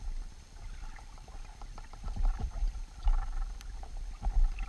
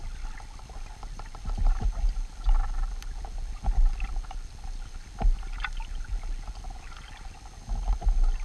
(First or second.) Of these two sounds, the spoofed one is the first